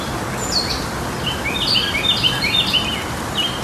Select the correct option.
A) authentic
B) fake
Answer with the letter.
A